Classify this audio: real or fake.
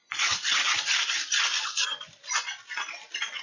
real